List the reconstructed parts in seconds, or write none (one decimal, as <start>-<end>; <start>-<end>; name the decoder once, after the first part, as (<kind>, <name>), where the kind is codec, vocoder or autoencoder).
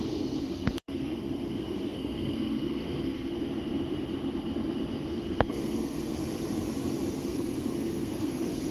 0.0-3.3 (codec, SNAC); 5.1-6.2; 7.1-8.7